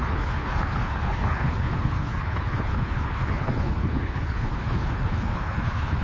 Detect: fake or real fake